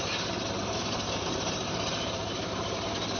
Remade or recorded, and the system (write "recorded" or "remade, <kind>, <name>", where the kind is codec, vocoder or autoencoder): remade, vocoder, BigVGAN v2